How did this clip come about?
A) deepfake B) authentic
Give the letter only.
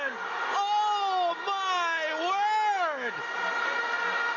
B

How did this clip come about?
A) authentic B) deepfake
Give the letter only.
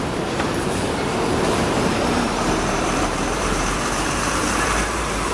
B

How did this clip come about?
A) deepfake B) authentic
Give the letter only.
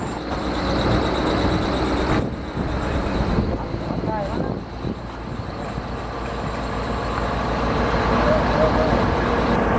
B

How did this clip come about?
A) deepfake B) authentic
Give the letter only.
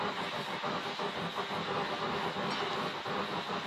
B